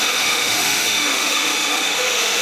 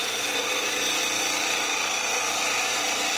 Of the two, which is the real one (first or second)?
second